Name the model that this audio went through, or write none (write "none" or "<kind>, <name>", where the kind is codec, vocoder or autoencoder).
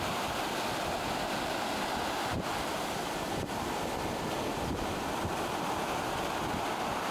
vocoder, BigVGAN v2